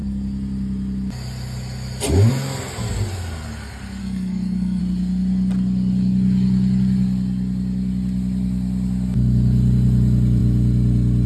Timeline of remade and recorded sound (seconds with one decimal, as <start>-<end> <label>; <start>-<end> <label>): 0.0-4.0 recorded; 4.0-4.8 remade; 4.8-11.3 recorded

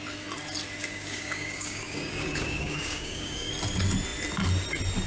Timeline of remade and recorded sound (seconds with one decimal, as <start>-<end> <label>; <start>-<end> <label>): 0.0-0.8 recorded; 0.8-3.5 remade; 3.5-5.1 recorded